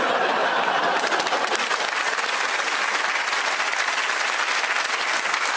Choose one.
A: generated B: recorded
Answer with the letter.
B